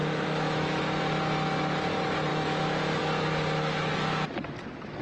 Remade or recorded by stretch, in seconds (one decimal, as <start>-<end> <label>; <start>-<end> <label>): 0.0-0.8 remade; 0.8-2.3 recorded; 2.3-3.0 remade; 3.0-5.0 recorded